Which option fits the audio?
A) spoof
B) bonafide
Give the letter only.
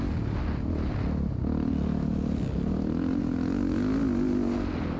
B